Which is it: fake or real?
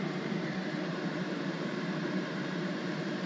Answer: fake